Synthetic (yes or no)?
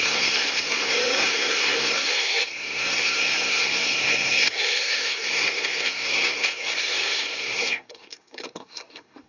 yes